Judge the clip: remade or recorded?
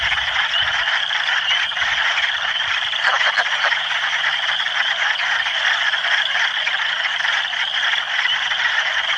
recorded